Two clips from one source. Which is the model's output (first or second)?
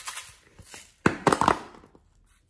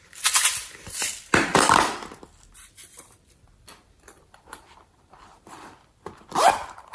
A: second